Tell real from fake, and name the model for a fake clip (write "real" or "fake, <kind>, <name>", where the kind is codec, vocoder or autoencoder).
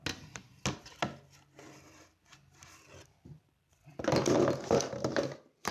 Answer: real